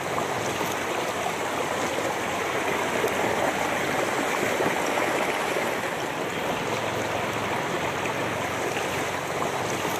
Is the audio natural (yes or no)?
yes